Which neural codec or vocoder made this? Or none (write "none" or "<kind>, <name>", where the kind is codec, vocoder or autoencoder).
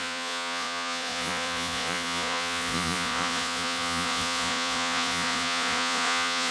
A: vocoder, Vocos